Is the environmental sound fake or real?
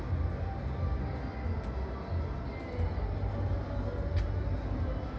real